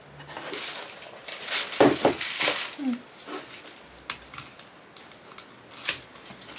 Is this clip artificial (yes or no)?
no